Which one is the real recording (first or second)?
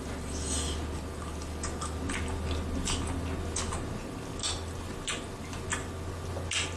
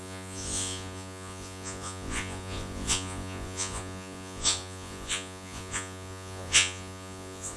first